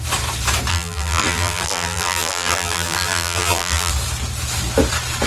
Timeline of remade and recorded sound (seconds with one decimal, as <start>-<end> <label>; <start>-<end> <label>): 0.0-0.7 recorded; 0.7-3.9 remade; 3.9-5.3 recorded